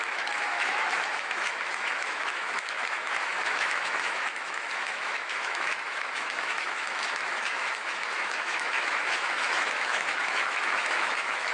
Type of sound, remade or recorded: remade